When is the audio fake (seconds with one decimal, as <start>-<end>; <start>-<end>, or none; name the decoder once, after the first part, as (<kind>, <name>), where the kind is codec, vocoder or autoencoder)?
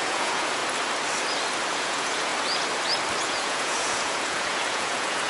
0.0-0.6 (vocoder, Vocos); 1.7-2.3; 3.2-5.3